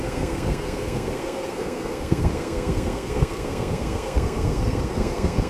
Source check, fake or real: fake